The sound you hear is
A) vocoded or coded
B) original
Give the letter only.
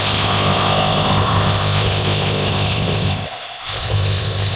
A